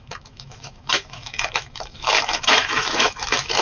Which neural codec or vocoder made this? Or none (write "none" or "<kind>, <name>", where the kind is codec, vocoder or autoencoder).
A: autoencoder, DAC-VAE